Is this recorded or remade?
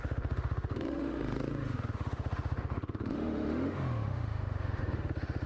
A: remade